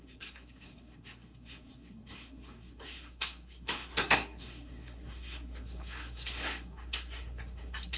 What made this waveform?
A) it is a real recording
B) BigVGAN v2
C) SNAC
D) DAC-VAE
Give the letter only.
C